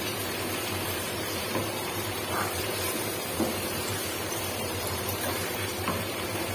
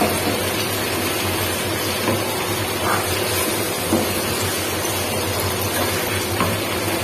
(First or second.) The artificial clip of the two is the first